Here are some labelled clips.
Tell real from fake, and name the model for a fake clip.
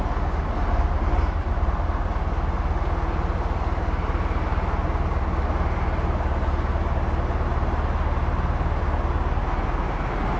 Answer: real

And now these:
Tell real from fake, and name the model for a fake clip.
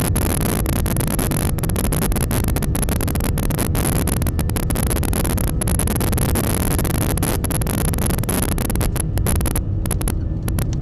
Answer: real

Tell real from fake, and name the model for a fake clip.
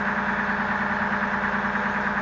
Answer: real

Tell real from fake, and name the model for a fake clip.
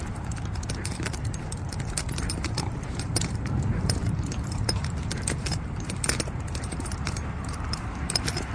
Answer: fake, vocoder, BigVGAN v2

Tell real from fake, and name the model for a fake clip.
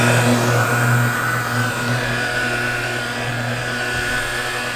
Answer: real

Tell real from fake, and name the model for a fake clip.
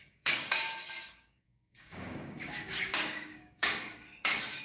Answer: fake, codec, DAC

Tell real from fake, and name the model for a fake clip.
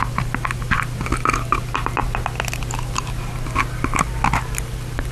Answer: real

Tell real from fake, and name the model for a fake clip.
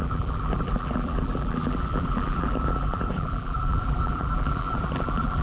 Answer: fake, vocoder, BigVGAN v2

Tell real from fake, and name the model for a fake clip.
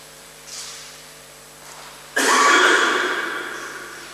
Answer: fake, vocoder, BigVGAN v2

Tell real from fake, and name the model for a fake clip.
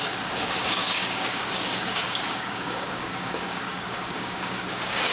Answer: fake, codec, DAC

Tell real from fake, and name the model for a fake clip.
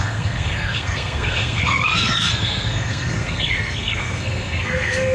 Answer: fake, codec, SNAC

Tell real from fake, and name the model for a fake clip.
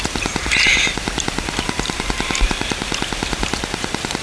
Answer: fake, vocoder, BigVGAN v2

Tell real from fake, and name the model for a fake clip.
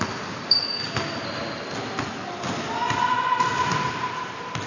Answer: real